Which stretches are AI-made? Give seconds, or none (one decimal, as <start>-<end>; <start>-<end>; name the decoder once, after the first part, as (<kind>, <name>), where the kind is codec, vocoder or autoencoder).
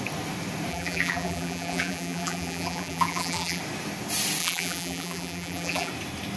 0.7-3.6 (vocoder, BigVGAN v2); 4.4-5.9